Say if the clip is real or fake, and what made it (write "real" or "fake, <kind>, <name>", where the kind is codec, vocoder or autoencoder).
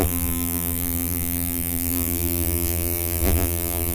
fake, vocoder, BigVGAN v2